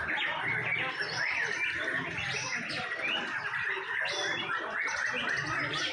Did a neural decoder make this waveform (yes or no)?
no